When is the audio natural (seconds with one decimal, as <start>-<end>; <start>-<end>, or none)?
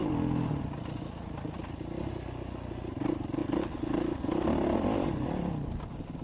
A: 0.0-6.2